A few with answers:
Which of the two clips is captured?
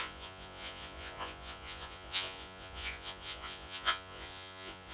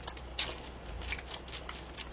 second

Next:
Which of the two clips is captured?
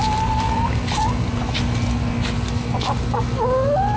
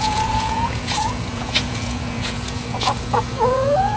first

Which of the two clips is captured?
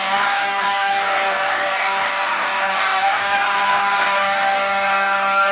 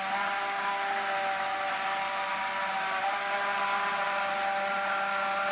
second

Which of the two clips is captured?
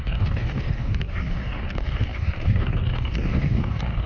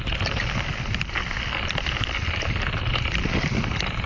second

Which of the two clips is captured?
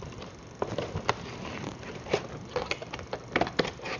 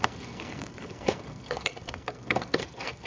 first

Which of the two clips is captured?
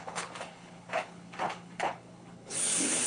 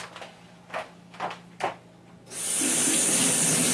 second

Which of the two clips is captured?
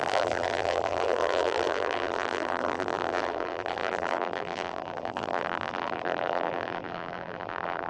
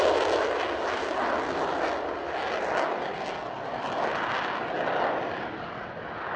second